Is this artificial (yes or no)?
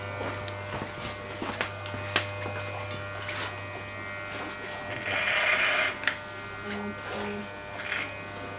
no